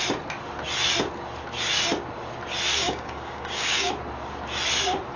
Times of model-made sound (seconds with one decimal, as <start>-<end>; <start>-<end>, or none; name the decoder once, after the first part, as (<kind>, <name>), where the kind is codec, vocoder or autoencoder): 2.7-3.9 (codec, DAC)